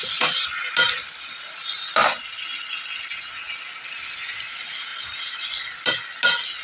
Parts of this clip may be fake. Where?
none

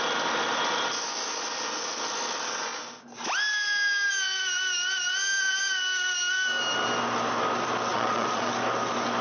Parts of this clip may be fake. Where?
7.9-8.5 (vocoder, Vocos)

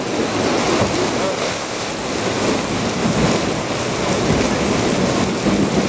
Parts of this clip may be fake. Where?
1.4-1.9 (codec, ZipCodec)

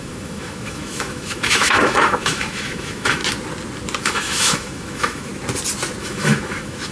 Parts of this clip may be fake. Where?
0.0-3.2 (autoencoder, DAC-VAE); 4.0-5.3; 6.0-6.9

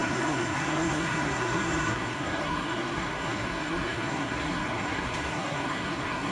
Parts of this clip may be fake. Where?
0.0-6.3 (codec, SNAC)

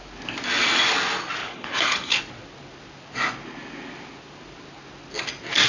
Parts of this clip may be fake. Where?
1.4-2.2 (codec, HILCodec)